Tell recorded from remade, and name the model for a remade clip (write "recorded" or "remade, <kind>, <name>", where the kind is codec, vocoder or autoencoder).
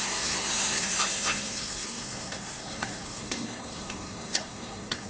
remade, codec, SNAC